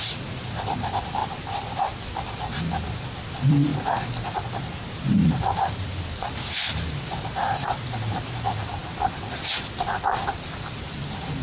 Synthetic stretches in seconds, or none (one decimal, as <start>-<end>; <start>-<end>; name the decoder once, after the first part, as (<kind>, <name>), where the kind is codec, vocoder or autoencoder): 0.0-3.7 (vocoder, BigVGAN v2); 4.9-8.8; 10.4-11.4